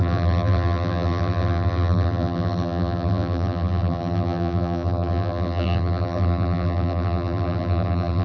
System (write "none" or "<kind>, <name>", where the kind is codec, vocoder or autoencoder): vocoder, BigVGAN v2